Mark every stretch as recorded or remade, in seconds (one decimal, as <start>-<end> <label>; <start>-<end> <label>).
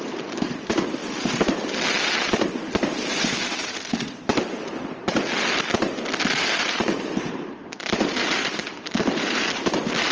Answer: 0.0-1.0 remade; 1.0-2.5 recorded; 2.5-5.1 remade; 5.1-6.4 recorded; 6.4-10.1 remade